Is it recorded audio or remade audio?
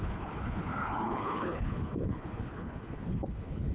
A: remade